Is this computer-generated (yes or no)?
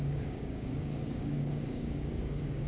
yes